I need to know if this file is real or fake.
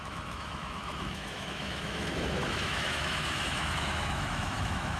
fake